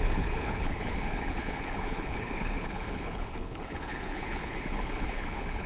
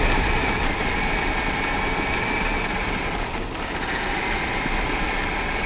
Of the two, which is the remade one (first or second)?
first